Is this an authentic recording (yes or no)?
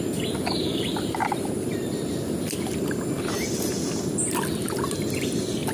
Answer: yes